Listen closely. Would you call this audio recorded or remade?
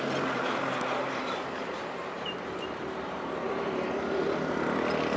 recorded